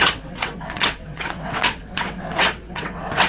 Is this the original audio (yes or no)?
no